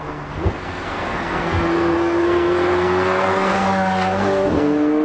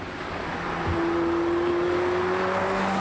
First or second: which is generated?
first